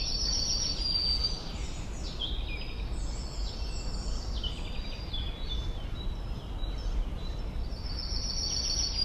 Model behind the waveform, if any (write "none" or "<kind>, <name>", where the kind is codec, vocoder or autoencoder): none